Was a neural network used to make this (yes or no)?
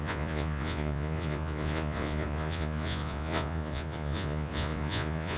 yes